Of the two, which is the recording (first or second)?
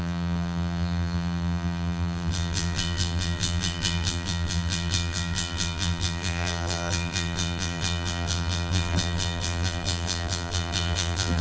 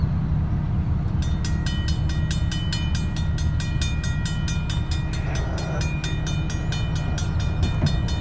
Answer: second